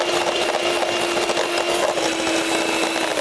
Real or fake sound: real